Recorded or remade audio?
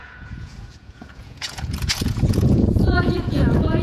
remade